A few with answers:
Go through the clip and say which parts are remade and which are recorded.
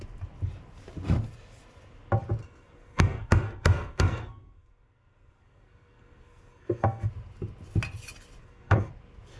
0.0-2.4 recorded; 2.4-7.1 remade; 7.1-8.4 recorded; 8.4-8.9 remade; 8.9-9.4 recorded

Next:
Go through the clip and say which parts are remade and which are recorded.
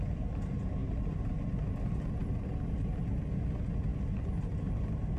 0.0-5.2 recorded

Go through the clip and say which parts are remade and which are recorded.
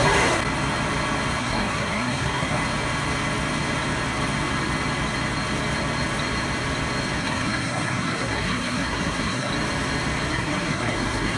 0.0-0.4 remade; 0.4-1.4 recorded; 1.4-2.6 remade; 2.6-7.2 recorded; 7.2-9.5 remade; 9.5-10.3 recorded; 10.3-11.4 remade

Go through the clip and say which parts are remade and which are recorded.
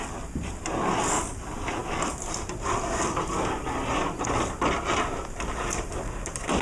0.0-6.6 recorded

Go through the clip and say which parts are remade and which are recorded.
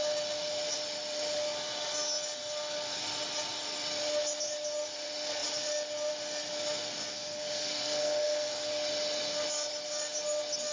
0.0-7.1 recorded; 7.1-8.5 remade; 8.5-10.7 recorded